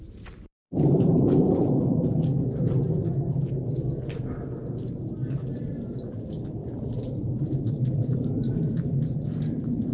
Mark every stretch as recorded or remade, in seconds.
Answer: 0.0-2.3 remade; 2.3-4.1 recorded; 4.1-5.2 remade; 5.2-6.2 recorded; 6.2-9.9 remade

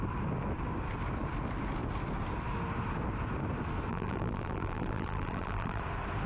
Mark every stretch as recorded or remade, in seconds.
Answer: 0.0-3.9 recorded; 3.9-5.8 remade; 5.8-6.3 recorded

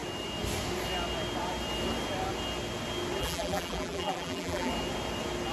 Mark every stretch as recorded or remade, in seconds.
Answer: 0.0-3.2 recorded; 3.2-4.7 remade; 4.7-5.5 recorded

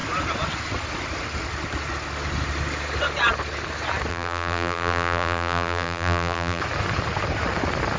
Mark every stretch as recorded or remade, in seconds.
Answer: 0.0-4.1 recorded; 4.1-6.6 remade; 6.6-8.0 recorded

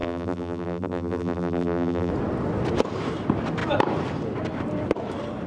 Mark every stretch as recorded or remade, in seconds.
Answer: 0.0-2.1 remade; 2.1-5.5 recorded

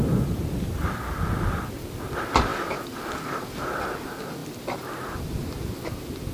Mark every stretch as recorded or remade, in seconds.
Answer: 0.0-2.5 remade; 2.5-3.8 recorded; 3.8-6.3 remade